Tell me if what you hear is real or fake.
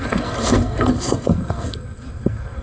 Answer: fake